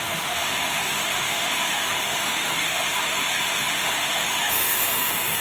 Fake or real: fake